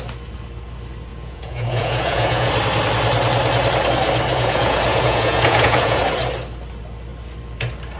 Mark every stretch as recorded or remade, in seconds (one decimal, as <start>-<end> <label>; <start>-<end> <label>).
0.0-1.1 recorded; 1.1-2.5 remade; 2.5-4.3 recorded; 4.3-6.0 remade; 6.0-8.0 recorded